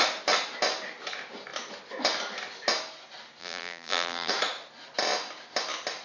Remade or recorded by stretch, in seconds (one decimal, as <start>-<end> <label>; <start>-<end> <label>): 0.0-3.4 recorded; 3.4-4.3 remade; 4.3-6.0 recorded